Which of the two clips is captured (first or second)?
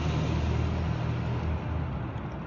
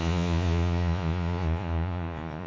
first